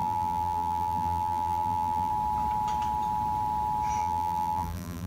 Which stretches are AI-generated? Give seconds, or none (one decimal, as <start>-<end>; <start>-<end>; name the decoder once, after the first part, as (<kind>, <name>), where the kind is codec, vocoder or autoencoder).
0.0-2.1 (vocoder, BigVGAN v2); 4.0-5.1